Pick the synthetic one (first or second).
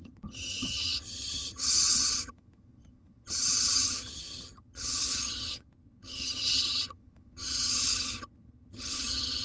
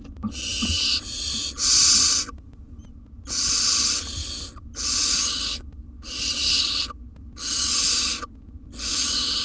first